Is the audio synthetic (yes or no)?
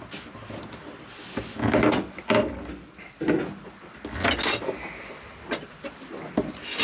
no